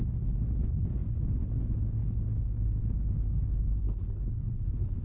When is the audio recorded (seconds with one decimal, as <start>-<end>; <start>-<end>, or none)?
0.0-3.8